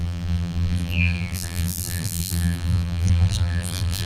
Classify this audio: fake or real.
fake